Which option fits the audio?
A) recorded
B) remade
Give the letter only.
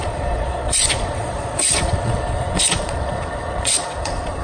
B